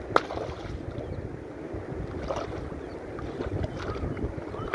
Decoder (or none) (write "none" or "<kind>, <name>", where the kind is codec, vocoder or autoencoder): none